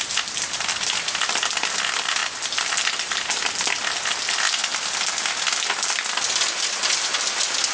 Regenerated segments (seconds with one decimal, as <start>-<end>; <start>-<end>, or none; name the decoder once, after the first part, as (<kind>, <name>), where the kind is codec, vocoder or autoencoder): none